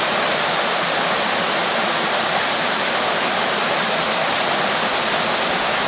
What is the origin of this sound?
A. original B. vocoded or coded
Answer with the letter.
A